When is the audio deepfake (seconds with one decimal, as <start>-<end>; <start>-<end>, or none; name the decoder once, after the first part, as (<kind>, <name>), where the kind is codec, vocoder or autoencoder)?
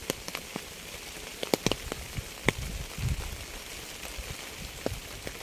none